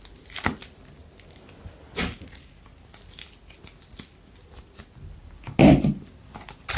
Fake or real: real